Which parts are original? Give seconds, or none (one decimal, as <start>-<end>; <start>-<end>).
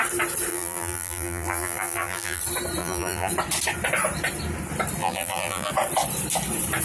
0.0-0.5; 2.4-2.8; 3.3-5.0; 5.7-6.8